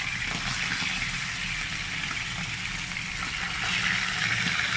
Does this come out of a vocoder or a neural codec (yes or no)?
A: no